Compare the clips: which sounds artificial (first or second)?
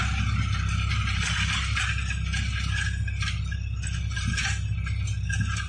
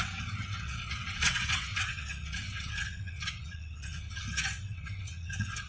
second